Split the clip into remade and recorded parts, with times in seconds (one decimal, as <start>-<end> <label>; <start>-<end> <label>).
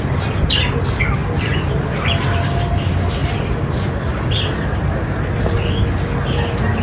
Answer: 0.0-3.2 recorded; 3.2-4.4 remade; 4.4-6.8 recorded